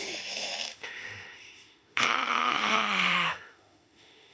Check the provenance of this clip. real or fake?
fake